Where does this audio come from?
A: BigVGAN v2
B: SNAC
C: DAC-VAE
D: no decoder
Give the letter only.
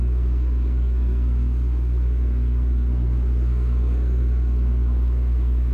B